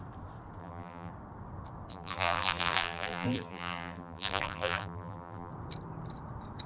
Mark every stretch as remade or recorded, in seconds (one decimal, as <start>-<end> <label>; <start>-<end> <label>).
0.0-0.6 recorded; 0.6-1.1 remade; 1.1-1.9 recorded; 1.9-5.5 remade; 5.5-6.7 recorded